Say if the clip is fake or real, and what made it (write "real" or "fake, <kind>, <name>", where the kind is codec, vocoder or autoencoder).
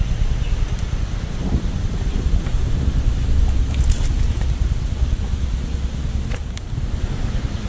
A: real